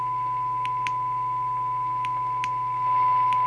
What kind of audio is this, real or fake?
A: real